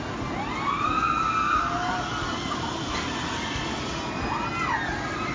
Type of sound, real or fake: real